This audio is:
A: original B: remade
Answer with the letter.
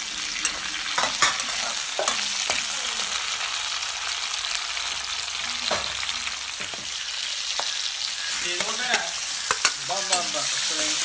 A